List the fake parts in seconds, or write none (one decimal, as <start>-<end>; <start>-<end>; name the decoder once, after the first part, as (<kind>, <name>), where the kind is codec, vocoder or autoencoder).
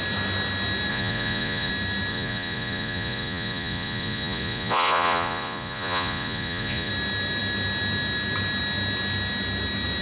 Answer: 0.9-1.7 (vocoder, Vocos); 2.1-6.9